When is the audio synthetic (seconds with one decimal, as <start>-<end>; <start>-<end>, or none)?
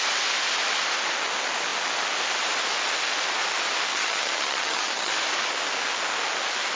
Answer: 3.9-5.1